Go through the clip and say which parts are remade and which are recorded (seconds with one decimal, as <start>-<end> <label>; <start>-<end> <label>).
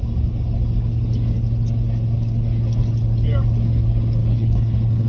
0.0-4.2 recorded; 4.2-5.1 remade